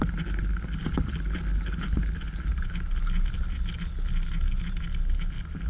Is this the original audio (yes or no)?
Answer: yes